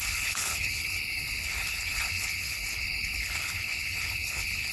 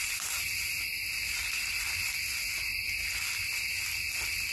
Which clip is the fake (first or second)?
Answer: first